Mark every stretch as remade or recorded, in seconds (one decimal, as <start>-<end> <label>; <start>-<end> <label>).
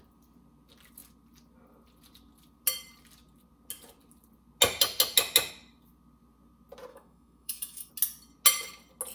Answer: 0.0-6.9 recorded; 6.9-7.9 remade; 7.9-9.1 recorded